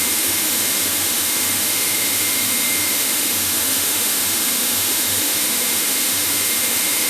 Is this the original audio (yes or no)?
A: no